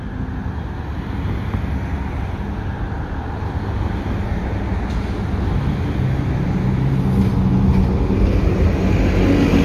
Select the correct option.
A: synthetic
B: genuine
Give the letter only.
B